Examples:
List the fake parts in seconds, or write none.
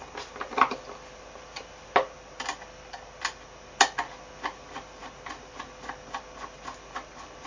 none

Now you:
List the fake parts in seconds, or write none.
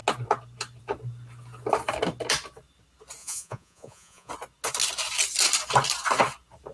3.2-4.3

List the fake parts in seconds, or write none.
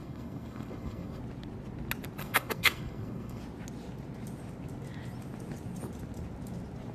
0.0-1.2; 2.2-3.4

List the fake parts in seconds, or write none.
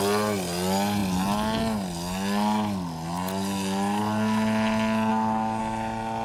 5.1-5.6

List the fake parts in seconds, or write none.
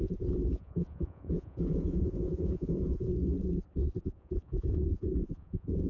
0.0-3.1; 4.0-5.9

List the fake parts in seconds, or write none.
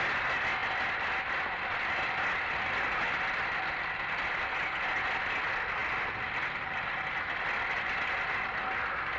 none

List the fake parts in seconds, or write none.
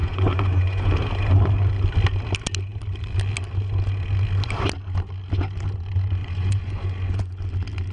0.0-0.8; 6.2-7.4